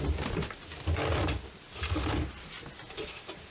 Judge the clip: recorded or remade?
recorded